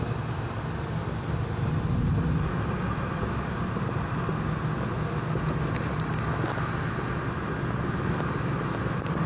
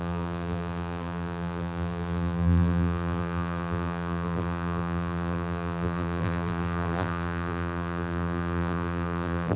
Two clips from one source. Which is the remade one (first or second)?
second